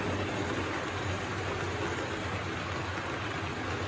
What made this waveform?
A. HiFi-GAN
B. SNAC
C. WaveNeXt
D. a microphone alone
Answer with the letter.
D